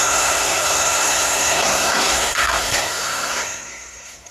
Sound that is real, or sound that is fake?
fake